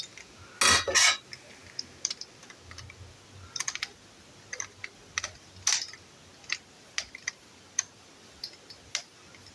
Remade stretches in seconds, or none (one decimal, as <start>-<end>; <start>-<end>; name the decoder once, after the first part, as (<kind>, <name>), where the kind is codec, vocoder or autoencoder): none